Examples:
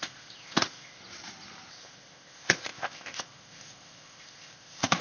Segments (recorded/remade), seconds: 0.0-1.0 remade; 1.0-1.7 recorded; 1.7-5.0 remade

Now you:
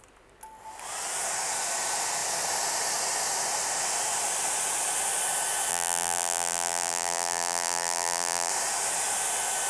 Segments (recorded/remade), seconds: 0.0-5.7 recorded; 5.7-8.5 remade; 8.5-9.7 recorded

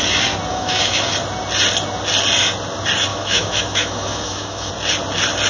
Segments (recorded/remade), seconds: 0.0-0.5 recorded; 0.5-1.1 remade; 1.1-3.1 recorded; 3.1-4.7 remade; 4.7-5.5 recorded

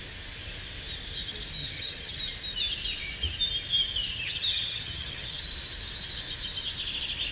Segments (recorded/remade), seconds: 0.0-1.6 recorded; 1.6-2.2 remade; 2.2-4.1 recorded; 4.1-5.4 remade; 5.4-7.3 recorded

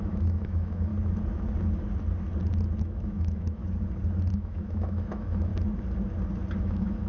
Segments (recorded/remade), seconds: 0.0-0.9 remade; 0.9-2.8 recorded; 2.8-3.6 remade; 3.6-4.3 recorded; 4.3-5.5 remade; 5.5-6.6 recorded; 6.6-7.1 remade